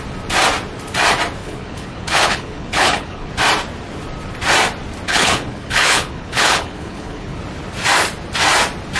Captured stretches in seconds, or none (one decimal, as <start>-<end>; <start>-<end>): 0.0-1.4; 3.3-5.1; 7.4-9.0